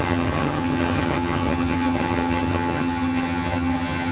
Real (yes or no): no